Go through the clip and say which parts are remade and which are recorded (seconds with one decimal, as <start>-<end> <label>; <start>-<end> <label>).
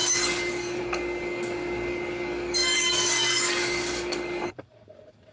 0.0-5.3 remade